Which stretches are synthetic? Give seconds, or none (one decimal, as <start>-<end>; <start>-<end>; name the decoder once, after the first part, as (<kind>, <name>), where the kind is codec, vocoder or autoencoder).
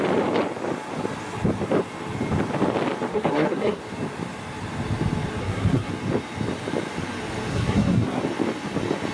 3.1-3.8 (codec, SNAC); 5.4-5.9; 7.5-8.2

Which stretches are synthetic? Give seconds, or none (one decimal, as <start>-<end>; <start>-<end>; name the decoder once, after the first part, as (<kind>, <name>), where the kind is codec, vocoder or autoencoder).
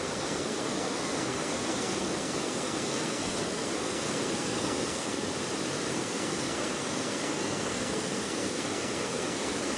0.0-5.3 (codec, SNAC); 5.9-9.8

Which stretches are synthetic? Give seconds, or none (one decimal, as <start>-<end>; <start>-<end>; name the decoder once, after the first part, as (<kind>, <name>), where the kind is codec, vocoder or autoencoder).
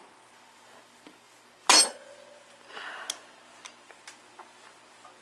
none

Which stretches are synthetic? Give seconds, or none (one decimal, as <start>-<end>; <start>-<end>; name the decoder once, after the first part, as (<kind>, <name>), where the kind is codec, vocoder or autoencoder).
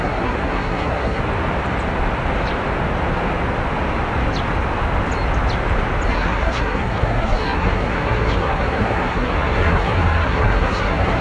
0.0-1.2 (codec, SNAC); 6.1-11.2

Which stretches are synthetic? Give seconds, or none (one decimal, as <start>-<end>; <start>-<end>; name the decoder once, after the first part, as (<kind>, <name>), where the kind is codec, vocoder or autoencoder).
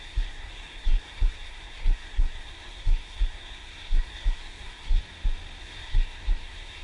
0.0-5.0 (codec, SNAC); 5.6-6.8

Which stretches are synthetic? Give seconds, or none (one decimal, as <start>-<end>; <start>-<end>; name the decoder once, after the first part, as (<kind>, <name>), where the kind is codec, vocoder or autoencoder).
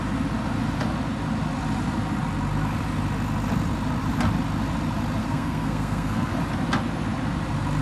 5.2-6.3 (codec, SNAC)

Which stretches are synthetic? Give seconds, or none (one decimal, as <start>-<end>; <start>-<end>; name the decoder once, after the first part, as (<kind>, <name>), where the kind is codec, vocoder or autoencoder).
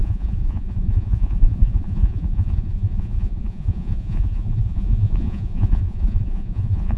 0.0-7.0 (vocoder, Vocos)